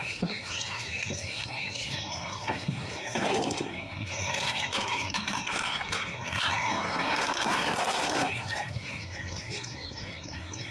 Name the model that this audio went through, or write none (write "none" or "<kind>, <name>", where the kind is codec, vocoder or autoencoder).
codec, SNAC